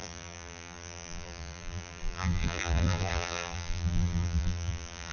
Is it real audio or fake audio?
fake